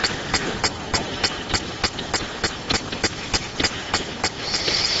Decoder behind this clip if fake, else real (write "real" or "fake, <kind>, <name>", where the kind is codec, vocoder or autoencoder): real